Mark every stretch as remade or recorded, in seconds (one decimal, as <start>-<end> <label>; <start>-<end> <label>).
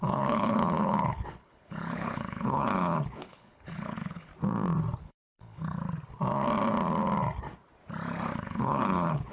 0.0-4.3 remade; 4.3-5.0 recorded; 5.0-5.8 remade; 5.8-8.4 recorded; 8.4-9.3 remade